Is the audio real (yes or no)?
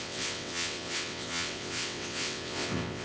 no